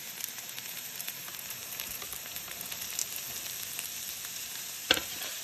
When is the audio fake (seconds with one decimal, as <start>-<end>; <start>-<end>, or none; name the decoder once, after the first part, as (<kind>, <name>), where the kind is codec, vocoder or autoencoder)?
0.0-3.0 (vocoder, BigVGAN v2); 4.2-5.4